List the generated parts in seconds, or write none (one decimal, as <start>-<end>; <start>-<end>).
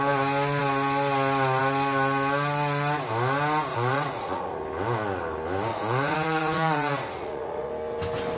3.7-4.5; 5.7-7.7